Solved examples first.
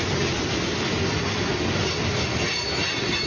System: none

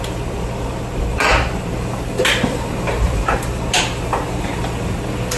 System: none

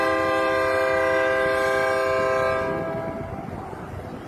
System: none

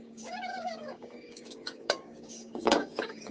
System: codec, DAC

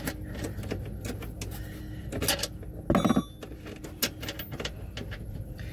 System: none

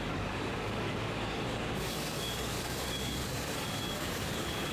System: codec, DAC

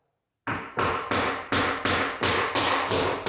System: none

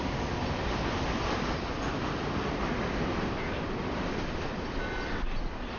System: none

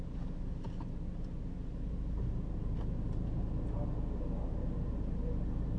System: none